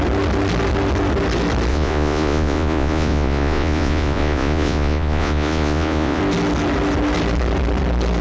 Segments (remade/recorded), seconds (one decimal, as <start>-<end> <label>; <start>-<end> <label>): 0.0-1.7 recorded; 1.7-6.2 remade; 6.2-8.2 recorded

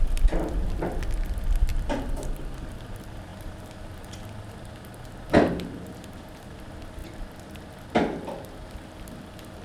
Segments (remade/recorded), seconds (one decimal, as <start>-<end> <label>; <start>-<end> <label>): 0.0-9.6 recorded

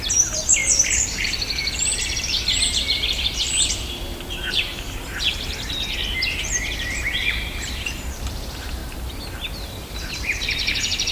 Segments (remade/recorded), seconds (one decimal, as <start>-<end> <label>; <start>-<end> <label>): 0.0-4.7 remade; 4.7-6.1 recorded; 6.1-8.8 remade; 8.8-9.7 recorded; 9.7-11.1 remade

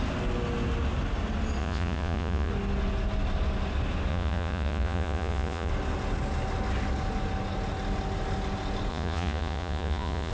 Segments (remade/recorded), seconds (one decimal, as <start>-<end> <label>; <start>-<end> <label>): 0.0-1.6 recorded; 1.6-2.5 remade; 2.5-4.1 recorded; 4.1-5.7 remade; 5.7-8.9 recorded; 8.9-10.3 remade

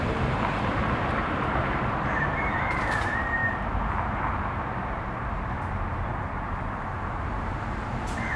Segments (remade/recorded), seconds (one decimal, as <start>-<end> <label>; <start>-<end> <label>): 0.0-3.4 remade; 3.4-4.1 recorded; 4.1-8.4 remade

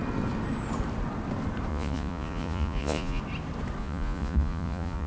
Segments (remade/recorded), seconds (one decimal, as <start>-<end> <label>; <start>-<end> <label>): 0.0-1.7 recorded; 1.7-3.2 remade; 3.2-3.8 recorded; 3.8-5.1 remade